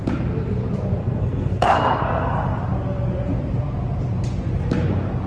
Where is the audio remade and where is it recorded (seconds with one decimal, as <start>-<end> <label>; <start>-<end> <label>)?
0.0-1.0 recorded; 1.0-2.6 remade; 2.6-5.3 recorded